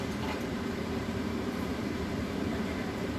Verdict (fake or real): fake